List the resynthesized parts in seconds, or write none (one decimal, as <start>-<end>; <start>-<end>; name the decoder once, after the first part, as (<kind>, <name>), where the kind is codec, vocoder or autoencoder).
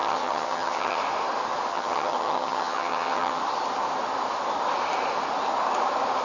0.0-1.0 (vocoder, HiFi-GAN); 1.7-3.4